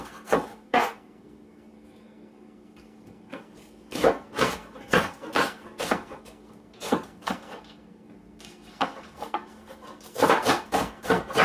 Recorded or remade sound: remade